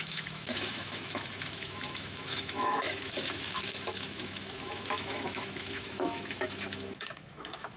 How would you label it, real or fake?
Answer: fake